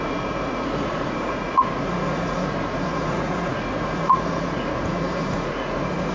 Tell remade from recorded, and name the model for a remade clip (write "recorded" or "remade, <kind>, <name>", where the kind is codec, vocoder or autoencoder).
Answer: remade, vocoder, Vocos